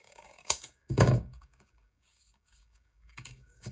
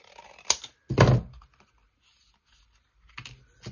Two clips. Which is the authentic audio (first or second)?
second